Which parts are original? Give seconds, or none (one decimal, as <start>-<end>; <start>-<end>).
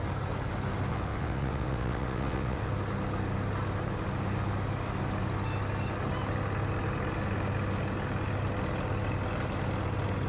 0.0-0.9; 2.7-10.3